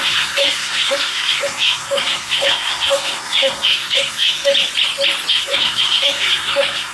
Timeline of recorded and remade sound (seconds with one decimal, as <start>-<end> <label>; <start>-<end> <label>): 0.0-4.5 remade; 4.5-5.3 recorded; 5.3-6.9 remade